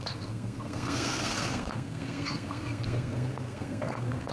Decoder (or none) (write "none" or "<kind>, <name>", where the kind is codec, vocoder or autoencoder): codec, SNAC